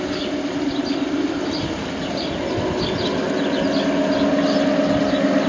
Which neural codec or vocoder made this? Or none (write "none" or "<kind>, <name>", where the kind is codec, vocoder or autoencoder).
none